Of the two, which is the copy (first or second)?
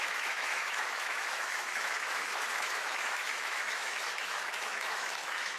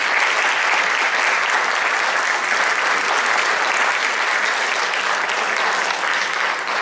first